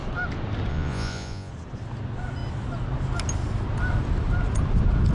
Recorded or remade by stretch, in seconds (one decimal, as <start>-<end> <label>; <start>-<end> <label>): 0.0-0.7 recorded; 0.7-1.5 remade; 1.5-5.1 recorded